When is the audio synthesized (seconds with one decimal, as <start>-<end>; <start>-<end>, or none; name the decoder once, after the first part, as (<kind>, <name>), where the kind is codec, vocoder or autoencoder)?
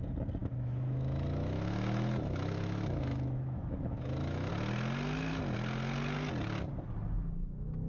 0.4-4.5 (autoencoder, DAC-VAE)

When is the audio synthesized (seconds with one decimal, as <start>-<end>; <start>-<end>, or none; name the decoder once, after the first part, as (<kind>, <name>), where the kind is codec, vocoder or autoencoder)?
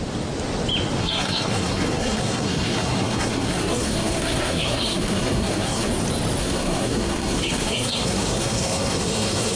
1.0-5.9 (codec, SNAC); 6.4-9.6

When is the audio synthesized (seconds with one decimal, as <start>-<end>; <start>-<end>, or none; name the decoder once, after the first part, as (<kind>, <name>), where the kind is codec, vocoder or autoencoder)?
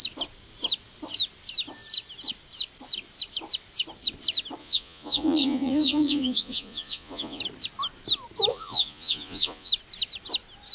4.6-7.4 (vocoder, Vocos); 8.5-9.7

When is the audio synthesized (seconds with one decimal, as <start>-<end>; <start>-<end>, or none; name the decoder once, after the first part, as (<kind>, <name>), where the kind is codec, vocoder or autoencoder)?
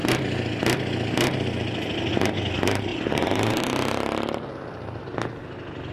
2.9-5.0 (vocoder, BigVGAN v2)